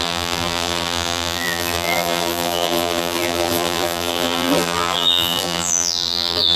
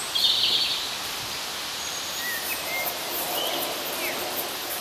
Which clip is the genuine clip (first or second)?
second